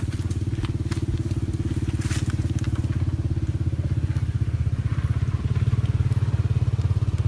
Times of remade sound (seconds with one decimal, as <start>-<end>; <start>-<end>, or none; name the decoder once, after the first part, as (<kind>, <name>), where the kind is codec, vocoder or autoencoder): 4.9-5.4 (vocoder, BigVGAN v2)